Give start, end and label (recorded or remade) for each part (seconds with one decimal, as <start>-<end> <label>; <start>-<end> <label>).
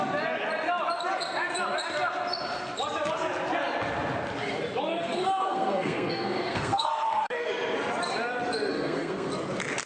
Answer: 0.0-4.9 recorded; 4.9-7.5 remade; 7.5-8.7 recorded; 8.7-9.3 remade; 9.3-9.9 recorded